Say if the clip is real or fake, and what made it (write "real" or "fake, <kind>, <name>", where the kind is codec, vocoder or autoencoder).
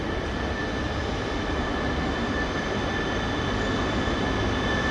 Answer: real